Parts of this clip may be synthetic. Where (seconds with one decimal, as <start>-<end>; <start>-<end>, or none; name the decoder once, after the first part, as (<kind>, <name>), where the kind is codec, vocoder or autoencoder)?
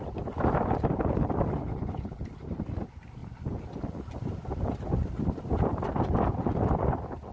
none